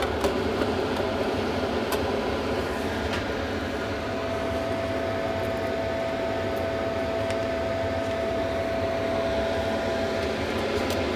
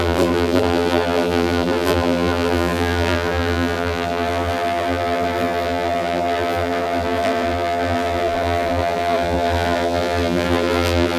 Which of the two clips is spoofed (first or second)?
second